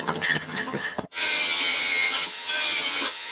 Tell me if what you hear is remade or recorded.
remade